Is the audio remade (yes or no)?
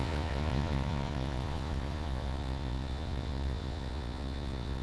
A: yes